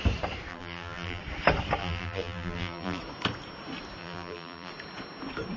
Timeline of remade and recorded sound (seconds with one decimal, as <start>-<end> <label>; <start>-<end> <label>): 0.0-0.5 recorded; 0.5-1.2 remade; 1.2-1.8 recorded; 1.8-3.0 remade; 3.0-4.0 recorded; 4.0-4.7 remade; 4.7-5.6 recorded